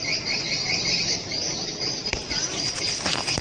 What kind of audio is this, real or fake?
real